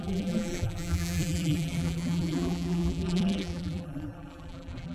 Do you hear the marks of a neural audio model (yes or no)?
yes